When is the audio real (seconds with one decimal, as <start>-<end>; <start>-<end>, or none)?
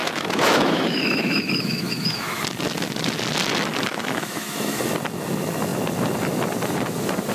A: 2.4-3.9; 4.8-7.3